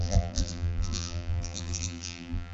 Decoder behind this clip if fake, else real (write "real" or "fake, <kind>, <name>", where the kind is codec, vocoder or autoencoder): fake, vocoder, BigVGAN v2